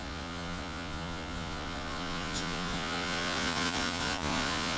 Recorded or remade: remade